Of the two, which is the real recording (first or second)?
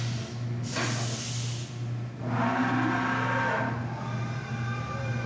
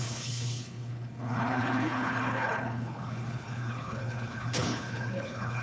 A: first